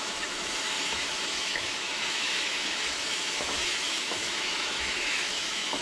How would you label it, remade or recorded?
remade